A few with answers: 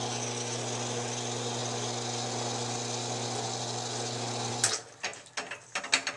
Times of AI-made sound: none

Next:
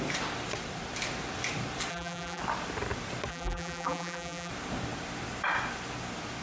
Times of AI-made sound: 1.9-2.4 (vocoder, BigVGAN v2); 3.3-4.5

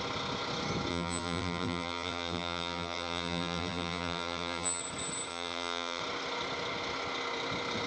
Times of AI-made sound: 0.9-4.8 (vocoder, BigVGAN v2); 5.3-6.0

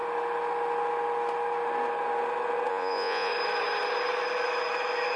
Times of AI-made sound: 2.7-3.3 (vocoder, Vocos)

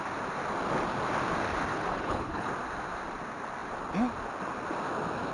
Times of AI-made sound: 1.7-2.5 (codec, HILCodec)

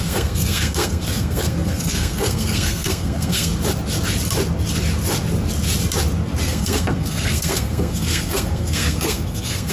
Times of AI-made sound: 0.0-3.5 (codec, SNAC); 6.4-9.7

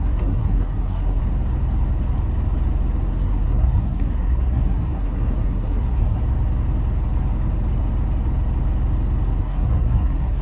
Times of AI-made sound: 0.0-1.2 (codec, SNAC); 3.2-6.2; 9.4-10.4